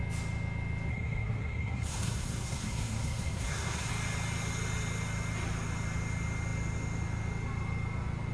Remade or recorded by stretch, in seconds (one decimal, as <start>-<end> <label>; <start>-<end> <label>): 0.0-0.9 recorded; 0.9-3.9 remade; 3.9-8.3 recorded